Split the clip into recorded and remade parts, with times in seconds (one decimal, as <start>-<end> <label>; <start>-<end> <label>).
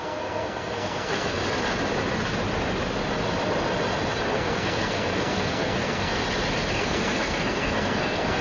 0.0-1.4 remade; 1.4-4.3 recorded; 4.3-6.2 remade; 6.2-6.7 recorded; 6.7-8.4 remade